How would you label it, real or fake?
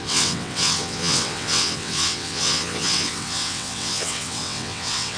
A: fake